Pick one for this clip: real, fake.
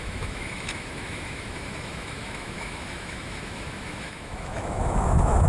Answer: fake